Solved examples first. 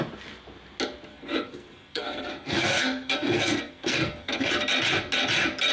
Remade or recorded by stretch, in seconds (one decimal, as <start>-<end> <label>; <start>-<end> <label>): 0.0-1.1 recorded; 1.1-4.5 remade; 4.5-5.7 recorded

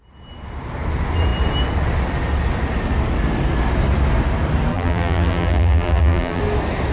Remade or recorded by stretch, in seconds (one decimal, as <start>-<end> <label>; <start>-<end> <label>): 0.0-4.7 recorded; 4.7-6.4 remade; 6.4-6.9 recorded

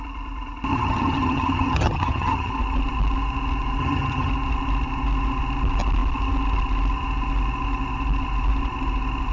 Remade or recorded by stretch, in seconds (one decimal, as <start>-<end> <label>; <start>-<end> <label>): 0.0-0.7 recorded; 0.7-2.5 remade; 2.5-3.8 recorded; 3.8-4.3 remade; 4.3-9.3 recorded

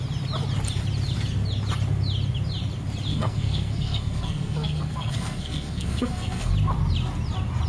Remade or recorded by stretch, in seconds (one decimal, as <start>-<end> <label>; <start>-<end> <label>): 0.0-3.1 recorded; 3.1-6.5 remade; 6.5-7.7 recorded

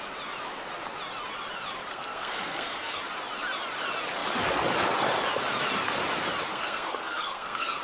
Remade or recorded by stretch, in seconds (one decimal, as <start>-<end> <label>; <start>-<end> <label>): 0.0-1.9 recorded; 1.9-3.0 remade; 3.0-6.5 recorded; 6.5-7.8 remade

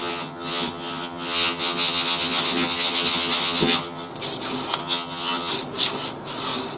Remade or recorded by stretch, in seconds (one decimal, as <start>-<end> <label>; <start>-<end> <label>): 0.0-4.1 remade; 4.1-4.8 recorded; 4.8-5.5 remade; 5.5-6.8 recorded